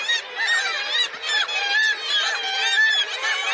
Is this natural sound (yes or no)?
yes